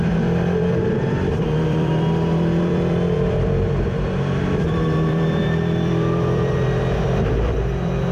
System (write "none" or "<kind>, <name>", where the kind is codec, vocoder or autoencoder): vocoder, BigVGAN v2